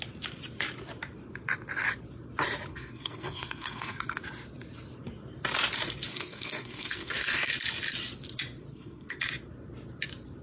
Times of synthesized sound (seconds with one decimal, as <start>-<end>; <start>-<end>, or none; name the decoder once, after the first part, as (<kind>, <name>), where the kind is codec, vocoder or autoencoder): 2.7-4.2 (codec, SNAC); 6.1-7.5; 8.7-9.2